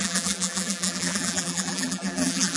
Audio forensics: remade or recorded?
remade